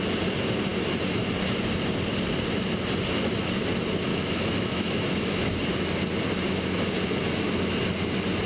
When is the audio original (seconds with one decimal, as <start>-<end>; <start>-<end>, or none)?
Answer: 0.0-4.1; 5.6-8.5